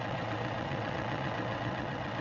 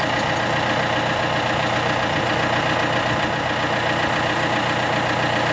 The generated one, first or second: first